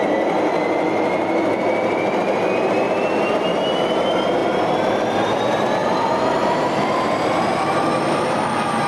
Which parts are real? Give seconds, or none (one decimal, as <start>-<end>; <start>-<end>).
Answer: 0.0-3.5; 4.0-5.8; 7.4-8.9